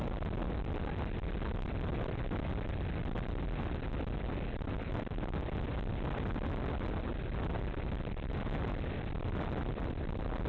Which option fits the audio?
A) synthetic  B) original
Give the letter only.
B